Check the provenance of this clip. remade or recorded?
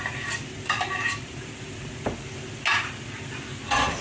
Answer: recorded